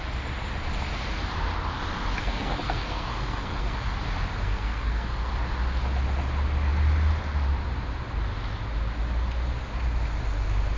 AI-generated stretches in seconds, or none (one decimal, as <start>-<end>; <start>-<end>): 2.2-4.0; 4.4-5.3